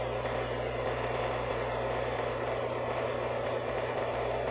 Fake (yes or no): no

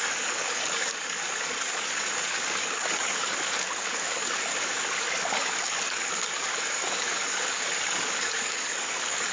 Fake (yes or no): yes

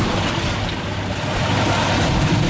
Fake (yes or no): no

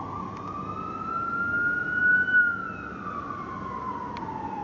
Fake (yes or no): no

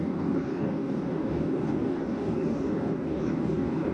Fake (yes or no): yes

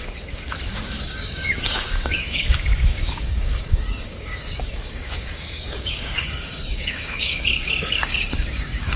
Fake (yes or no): yes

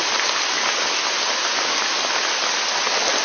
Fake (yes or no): no